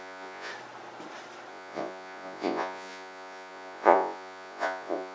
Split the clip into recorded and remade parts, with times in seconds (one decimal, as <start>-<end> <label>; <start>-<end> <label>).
0.0-0.5 remade; 0.5-1.5 recorded; 1.5-5.1 remade